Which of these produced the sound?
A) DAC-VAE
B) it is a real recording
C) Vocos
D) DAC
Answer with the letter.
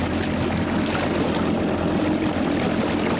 B